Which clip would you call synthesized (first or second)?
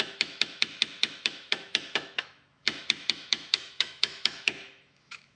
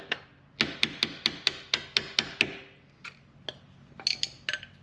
first